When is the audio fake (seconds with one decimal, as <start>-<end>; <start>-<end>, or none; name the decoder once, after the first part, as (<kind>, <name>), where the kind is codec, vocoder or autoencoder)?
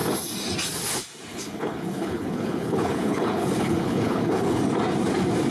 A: 1.3-4.6 (codec, HILCodec)